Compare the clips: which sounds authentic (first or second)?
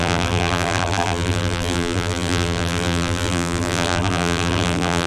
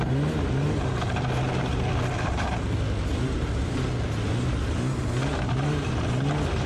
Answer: second